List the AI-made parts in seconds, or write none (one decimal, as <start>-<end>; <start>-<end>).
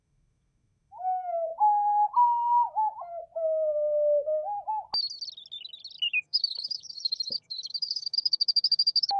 0.0-1.5; 6.1-9.2